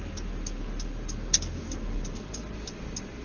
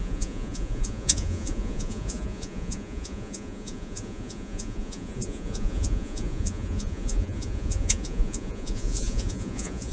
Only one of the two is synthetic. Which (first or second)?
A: second